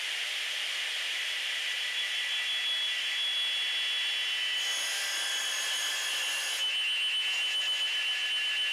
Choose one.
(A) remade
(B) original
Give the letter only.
B